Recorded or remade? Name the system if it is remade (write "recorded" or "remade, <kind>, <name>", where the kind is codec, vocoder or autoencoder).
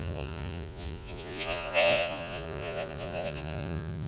remade, vocoder, Vocos